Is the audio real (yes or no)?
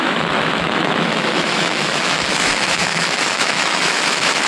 no